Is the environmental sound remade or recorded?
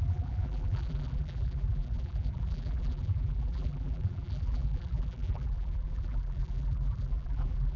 remade